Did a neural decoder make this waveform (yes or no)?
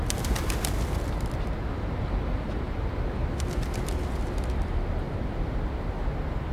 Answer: no